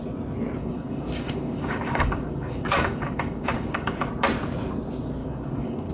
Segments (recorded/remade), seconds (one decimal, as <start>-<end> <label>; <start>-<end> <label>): 0.0-0.6 recorded; 0.6-4.1 remade; 4.1-5.2 recorded; 5.2-5.9 remade